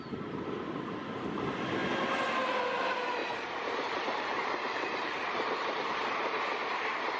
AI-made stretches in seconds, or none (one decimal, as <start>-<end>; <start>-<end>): 3.2-6.4